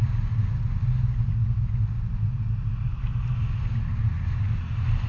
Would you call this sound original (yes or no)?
yes